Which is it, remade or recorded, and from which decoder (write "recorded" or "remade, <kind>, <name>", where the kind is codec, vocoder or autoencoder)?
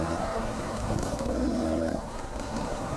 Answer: remade, codec, SNAC